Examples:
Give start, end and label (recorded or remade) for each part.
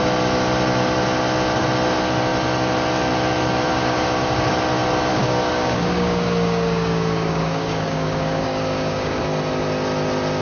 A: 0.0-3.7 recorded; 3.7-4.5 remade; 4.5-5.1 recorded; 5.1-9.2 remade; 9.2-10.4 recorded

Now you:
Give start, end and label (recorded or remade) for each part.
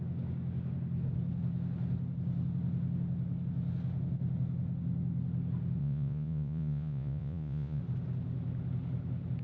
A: 0.0-5.8 recorded; 5.8-7.8 remade; 7.8-9.4 recorded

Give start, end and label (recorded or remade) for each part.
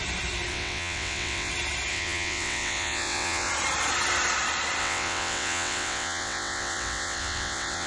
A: 0.0-0.5 recorded; 0.5-1.5 remade; 1.5-1.9 recorded; 1.9-3.5 remade; 3.5-4.8 recorded; 4.8-7.9 remade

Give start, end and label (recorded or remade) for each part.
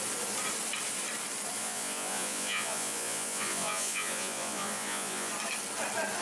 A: 0.0-1.6 recorded; 1.6-5.3 remade; 5.3-6.2 recorded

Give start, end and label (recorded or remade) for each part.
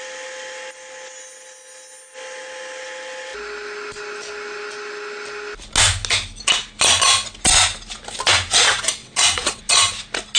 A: 0.0-9.0 recorded; 9.0-9.6 remade; 9.6-10.4 recorded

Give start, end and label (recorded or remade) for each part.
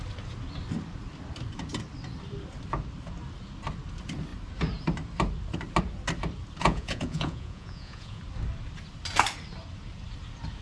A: 0.0-6.6 recorded; 6.6-8.2 remade; 8.2-10.6 recorded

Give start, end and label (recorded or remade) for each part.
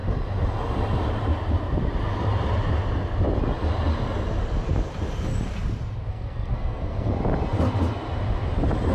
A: 0.0-6.1 recorded; 6.1-7.1 remade; 7.1-8.9 recorded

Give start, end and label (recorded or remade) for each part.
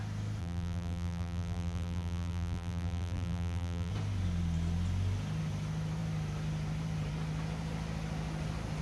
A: 0.0-0.4 recorded; 0.4-3.9 remade; 3.9-8.8 recorded